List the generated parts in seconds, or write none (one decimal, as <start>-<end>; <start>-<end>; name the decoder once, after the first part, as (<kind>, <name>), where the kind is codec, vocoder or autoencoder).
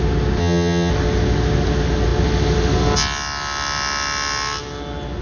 0.4-0.9 (vocoder, HiFi-GAN)